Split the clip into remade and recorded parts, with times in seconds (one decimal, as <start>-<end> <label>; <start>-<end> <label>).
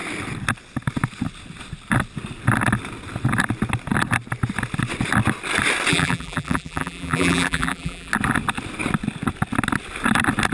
0.0-5.9 recorded; 5.9-8.1 remade; 8.1-10.5 recorded